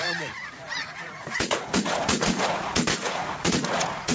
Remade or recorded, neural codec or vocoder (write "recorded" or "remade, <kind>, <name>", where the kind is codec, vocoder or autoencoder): remade, vocoder, Vocos